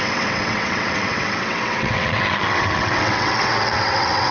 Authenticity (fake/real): fake